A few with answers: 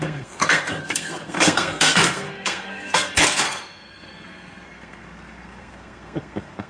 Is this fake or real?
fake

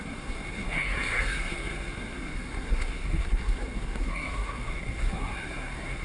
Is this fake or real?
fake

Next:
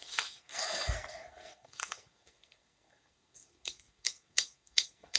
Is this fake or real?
fake